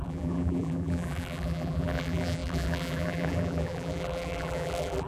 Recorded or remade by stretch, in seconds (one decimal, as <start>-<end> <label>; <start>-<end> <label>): 0.0-5.1 remade